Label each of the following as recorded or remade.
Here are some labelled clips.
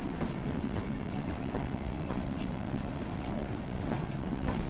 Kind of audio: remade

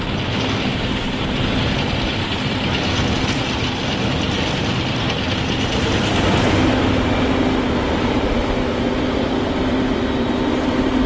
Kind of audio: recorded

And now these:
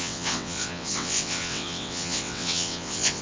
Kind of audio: remade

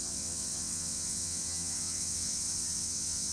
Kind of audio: remade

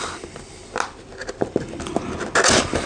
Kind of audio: recorded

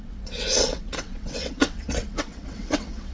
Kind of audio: remade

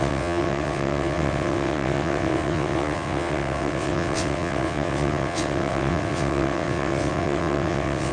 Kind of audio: remade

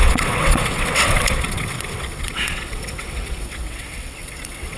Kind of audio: remade